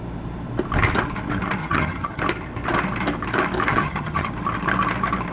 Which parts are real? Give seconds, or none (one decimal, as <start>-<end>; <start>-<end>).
0.0-1.6; 2.2-3.7; 4.3-5.3